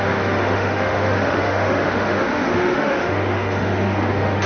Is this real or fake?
fake